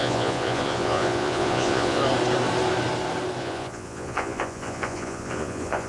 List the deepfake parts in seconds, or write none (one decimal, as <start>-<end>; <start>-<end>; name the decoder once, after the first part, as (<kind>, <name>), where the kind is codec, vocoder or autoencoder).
0.0-2.0 (vocoder, Vocos); 3.4-5.9